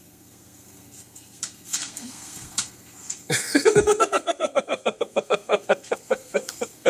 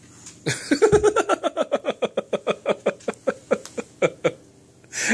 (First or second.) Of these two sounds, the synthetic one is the first